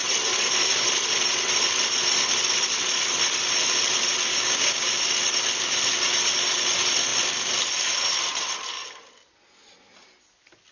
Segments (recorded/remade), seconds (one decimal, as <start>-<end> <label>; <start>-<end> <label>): 0.0-4.3 recorded; 4.3-4.9 remade; 4.9-10.7 recorded